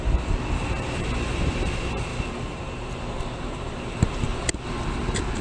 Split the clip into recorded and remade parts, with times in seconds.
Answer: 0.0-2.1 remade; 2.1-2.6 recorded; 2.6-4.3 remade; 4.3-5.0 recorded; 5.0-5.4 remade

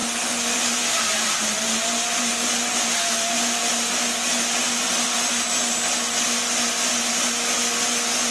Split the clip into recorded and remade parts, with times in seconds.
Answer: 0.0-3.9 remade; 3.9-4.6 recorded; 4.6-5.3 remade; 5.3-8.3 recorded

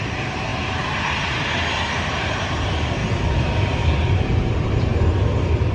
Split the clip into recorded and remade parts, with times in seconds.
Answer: 0.0-3.0 remade; 3.0-4.1 recorded; 4.1-4.9 remade; 4.9-5.7 recorded

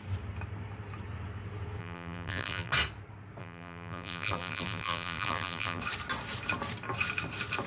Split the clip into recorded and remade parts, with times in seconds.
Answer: 0.0-1.8 recorded; 1.8-2.7 remade; 2.7-3.4 recorded; 3.4-5.8 remade; 5.8-7.7 recorded